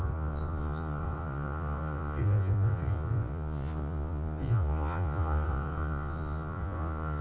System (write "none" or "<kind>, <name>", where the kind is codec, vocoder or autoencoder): vocoder, Vocos